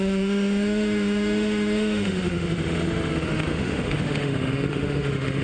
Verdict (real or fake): fake